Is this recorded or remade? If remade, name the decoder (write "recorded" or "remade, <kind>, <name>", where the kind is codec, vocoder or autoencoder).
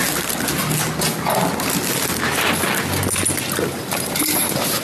recorded